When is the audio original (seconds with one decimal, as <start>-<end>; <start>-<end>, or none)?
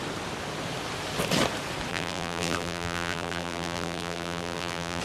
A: 0.0-1.9